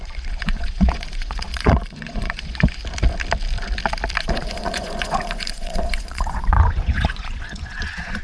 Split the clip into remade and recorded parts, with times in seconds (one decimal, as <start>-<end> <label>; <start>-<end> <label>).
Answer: 0.0-2.8 remade; 2.8-4.2 recorded; 4.2-8.2 remade